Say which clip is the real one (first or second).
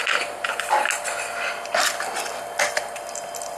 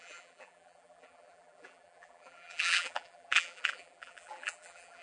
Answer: first